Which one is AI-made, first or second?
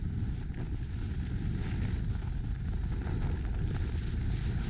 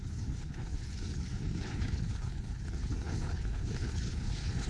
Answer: second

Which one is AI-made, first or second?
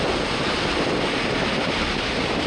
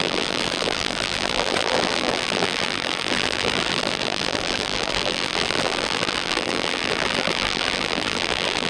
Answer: second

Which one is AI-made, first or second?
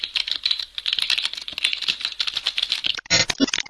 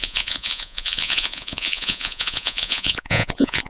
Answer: second